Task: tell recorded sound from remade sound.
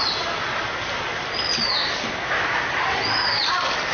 recorded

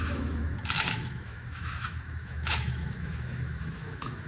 remade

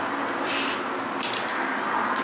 recorded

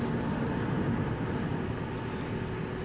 recorded